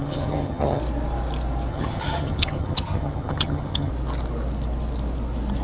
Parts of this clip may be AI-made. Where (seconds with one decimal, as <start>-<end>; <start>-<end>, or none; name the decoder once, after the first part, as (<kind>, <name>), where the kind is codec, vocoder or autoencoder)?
0.0-0.8 (vocoder, HiFi-GAN); 1.7-3.9